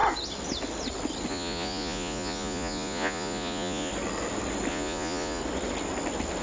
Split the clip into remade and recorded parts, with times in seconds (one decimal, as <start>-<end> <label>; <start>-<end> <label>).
0.0-1.3 recorded; 1.3-3.9 remade; 3.9-4.7 recorded; 4.7-5.4 remade; 5.4-6.4 recorded